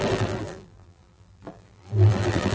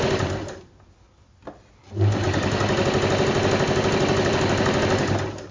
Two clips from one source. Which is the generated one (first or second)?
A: first